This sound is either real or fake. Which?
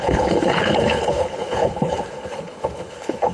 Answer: fake